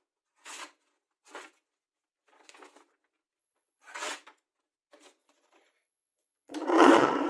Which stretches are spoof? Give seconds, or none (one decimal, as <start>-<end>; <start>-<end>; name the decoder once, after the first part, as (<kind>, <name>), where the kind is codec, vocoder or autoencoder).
3.4-4.1 (vocoder, Vocos); 5.2-7.3